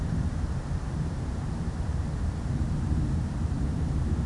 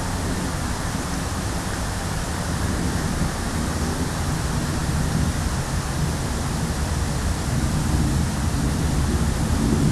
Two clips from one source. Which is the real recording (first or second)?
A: second